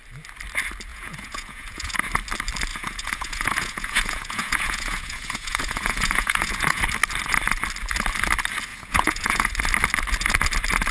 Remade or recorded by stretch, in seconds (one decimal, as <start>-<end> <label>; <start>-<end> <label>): 0.0-0.9 recorded; 0.9-2.1 remade; 2.1-2.7 recorded; 2.7-6.8 remade; 6.8-8.7 recorded; 8.7-9.5 remade; 9.5-10.9 recorded